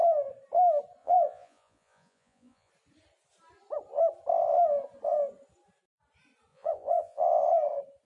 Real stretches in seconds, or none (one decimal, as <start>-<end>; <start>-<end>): 0.0-1.0; 2.7-6.5; 7.4-8.0